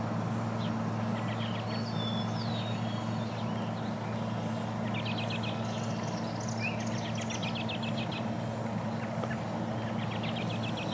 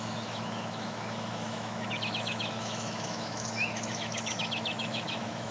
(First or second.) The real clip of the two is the first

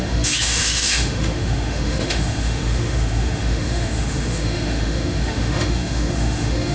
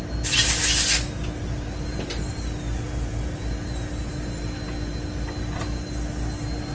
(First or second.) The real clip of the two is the second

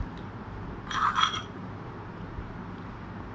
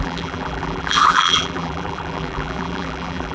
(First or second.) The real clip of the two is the first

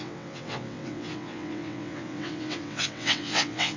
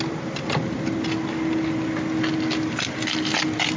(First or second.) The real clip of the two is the second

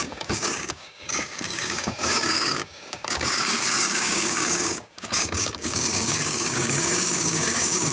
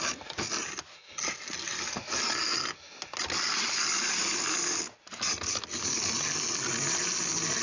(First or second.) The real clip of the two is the second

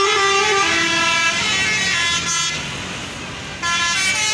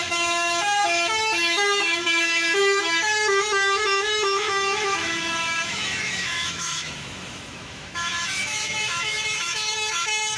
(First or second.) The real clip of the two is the first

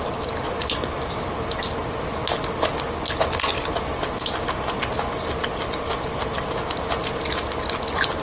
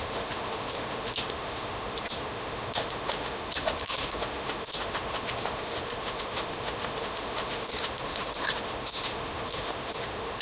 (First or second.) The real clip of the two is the first